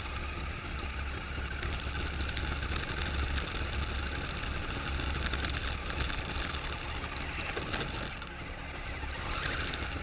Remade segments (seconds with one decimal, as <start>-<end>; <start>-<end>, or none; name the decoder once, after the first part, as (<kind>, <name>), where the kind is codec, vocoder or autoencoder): none